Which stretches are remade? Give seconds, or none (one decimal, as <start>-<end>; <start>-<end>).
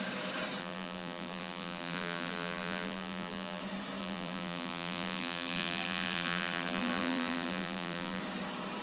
0.6-3.6; 4.0-8.2